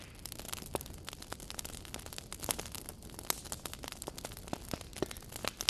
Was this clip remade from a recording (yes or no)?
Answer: no